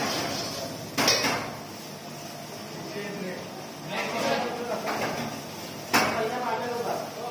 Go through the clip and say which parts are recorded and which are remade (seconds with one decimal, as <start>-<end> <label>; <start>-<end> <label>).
0.0-7.3 recorded